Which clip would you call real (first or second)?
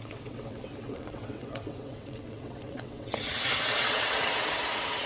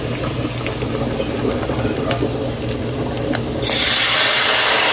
second